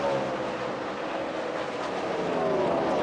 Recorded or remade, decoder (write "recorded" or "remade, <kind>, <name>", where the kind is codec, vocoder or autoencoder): recorded